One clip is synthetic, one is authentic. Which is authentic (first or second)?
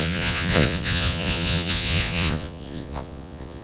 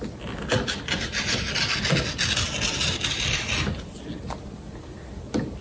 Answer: second